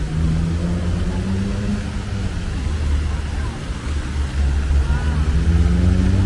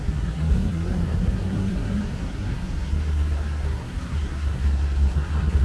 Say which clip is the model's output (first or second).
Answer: second